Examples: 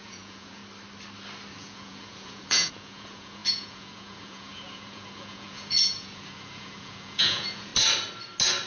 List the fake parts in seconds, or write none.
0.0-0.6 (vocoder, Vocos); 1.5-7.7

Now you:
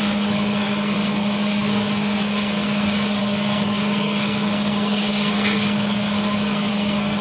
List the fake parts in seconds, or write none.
0.0-7.2 (codec, SNAC)